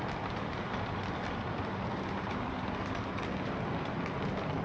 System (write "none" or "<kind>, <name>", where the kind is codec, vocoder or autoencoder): none